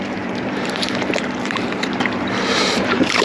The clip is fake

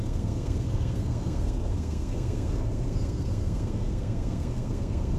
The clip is fake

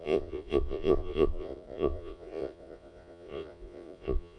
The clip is fake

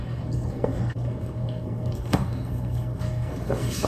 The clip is fake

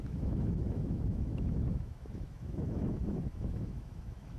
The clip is fake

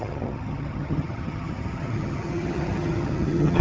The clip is fake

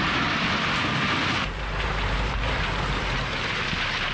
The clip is fake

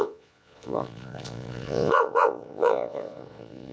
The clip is fake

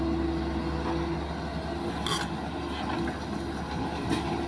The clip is real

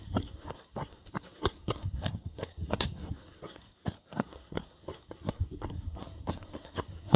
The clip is fake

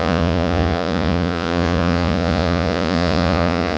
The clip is fake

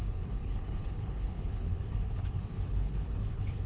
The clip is fake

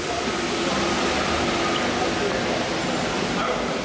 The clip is real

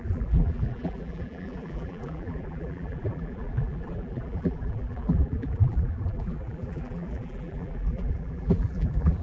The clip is fake